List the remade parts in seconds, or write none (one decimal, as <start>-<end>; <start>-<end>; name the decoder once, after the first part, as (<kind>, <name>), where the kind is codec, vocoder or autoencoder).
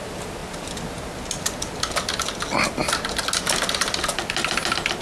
none